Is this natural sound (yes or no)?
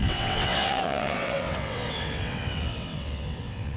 no